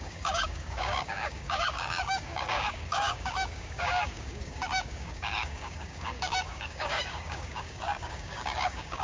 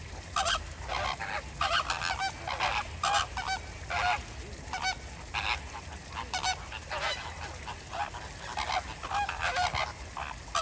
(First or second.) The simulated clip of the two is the first